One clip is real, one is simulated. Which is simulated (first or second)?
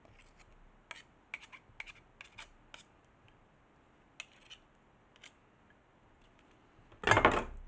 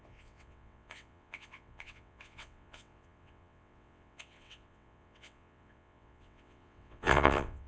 second